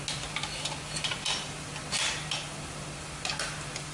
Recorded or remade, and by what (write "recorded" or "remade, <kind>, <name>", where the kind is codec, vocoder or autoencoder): recorded